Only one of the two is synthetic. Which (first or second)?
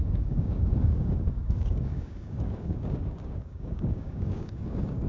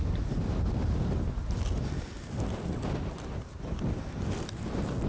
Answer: first